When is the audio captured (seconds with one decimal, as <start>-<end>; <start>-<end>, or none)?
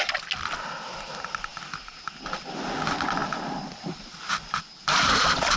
0.0-5.6